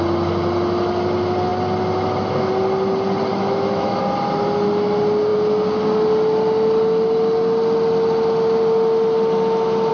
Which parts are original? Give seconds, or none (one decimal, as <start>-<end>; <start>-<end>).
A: 0.0-3.3; 4.0-9.9